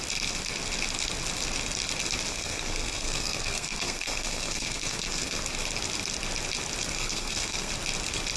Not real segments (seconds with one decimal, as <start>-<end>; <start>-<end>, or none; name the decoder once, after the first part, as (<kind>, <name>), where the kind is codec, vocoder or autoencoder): 2.3-5.4 (codec, SNAC); 6.9-7.7